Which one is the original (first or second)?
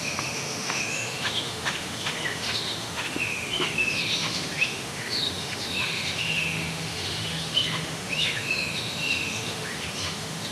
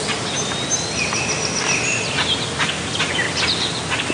second